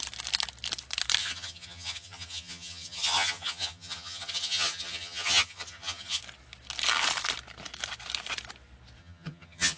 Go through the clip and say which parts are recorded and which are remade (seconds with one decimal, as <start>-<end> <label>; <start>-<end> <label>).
0.0-1.2 recorded; 1.2-6.2 remade; 6.2-9.0 recorded; 9.0-9.8 remade